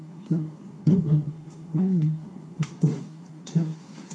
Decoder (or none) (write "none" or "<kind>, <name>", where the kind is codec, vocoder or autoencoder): codec, SNAC